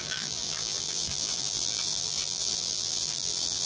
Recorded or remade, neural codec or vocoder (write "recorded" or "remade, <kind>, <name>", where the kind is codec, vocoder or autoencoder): remade, vocoder, BigVGAN v2